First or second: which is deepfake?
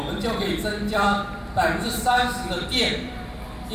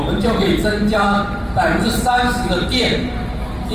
second